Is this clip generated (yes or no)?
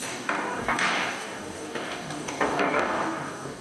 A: yes